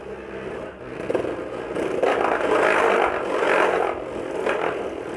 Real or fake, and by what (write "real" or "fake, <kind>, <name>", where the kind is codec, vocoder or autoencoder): real